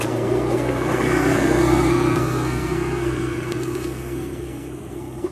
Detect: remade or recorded remade